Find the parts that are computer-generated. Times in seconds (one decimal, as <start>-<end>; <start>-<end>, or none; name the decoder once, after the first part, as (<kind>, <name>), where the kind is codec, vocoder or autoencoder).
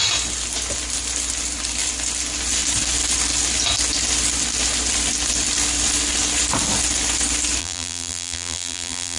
7.6-9.2 (vocoder, BigVGAN v2)